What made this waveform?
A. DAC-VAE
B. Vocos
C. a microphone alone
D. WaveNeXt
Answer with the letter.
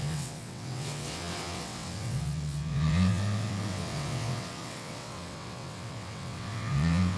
D